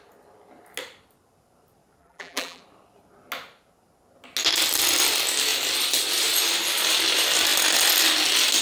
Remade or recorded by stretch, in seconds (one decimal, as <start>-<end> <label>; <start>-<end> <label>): 0.0-2.0 recorded; 2.0-2.6 remade; 2.6-8.6 recorded